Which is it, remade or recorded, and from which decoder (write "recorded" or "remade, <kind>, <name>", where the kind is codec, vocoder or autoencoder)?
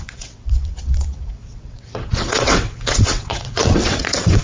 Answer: remade, vocoder, WaveNeXt